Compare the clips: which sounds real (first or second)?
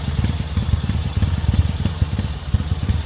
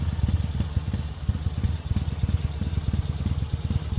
second